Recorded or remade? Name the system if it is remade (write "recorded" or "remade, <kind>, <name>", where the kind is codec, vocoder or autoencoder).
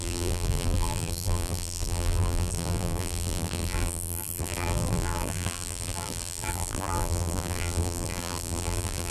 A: remade, vocoder, BigVGAN v2